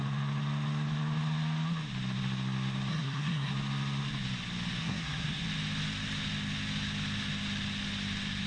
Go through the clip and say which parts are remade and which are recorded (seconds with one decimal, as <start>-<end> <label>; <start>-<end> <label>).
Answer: 0.0-2.9 recorded; 2.9-3.5 remade; 3.5-4.8 recorded; 4.8-5.4 remade; 5.4-8.5 recorded